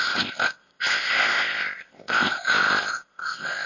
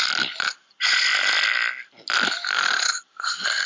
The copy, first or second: first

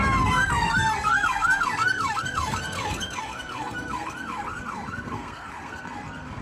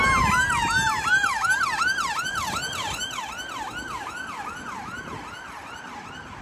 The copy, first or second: first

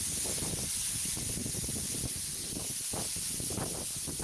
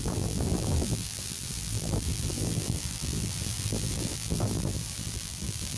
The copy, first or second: second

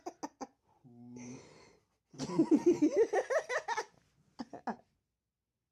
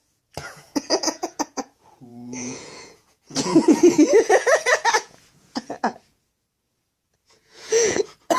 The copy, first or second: second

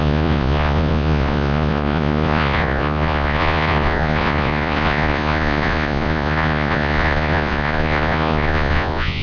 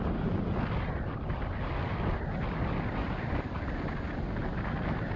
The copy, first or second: first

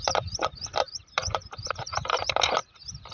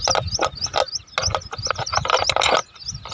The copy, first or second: first